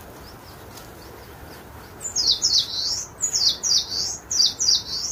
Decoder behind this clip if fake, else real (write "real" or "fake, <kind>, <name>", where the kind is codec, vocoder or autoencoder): real